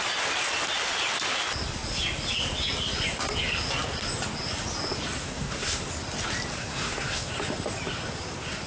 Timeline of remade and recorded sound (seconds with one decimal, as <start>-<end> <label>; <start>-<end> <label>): 0.0-5.2 recorded; 5.2-5.9 remade; 5.9-6.5 recorded; 6.5-7.3 remade; 7.3-8.7 recorded